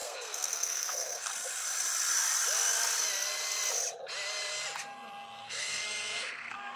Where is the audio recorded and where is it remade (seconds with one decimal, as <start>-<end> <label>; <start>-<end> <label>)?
0.0-1.3 remade; 1.3-5.4 recorded; 5.4-6.8 remade